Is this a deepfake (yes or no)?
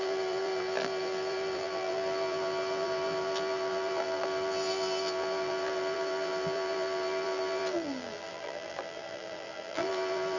yes